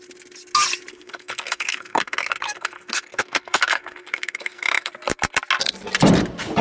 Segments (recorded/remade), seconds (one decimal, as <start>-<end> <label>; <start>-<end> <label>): 0.0-0.9 recorded; 0.9-4.9 remade; 4.9-6.6 recorded